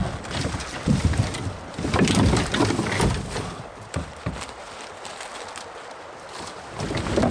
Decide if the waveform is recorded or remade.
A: recorded